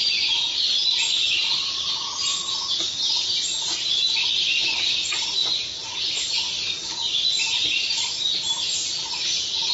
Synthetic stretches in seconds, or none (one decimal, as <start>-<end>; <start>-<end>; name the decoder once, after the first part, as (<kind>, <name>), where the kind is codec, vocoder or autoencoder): none